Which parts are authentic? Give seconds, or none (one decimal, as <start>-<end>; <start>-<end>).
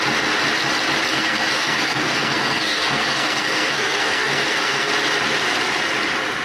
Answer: 0.0-1.1; 4.9-6.4